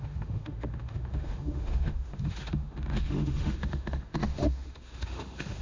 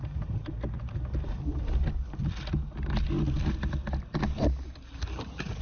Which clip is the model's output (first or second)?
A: first